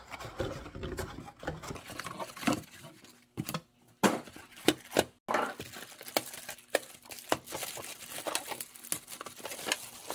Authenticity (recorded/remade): recorded